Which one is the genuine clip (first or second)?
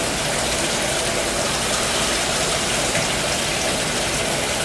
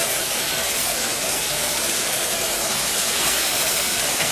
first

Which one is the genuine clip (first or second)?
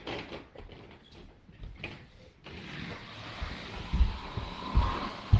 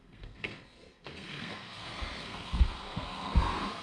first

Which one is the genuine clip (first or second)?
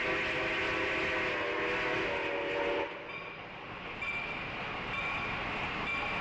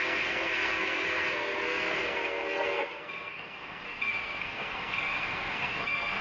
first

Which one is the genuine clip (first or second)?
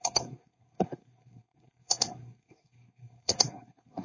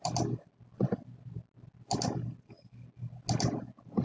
second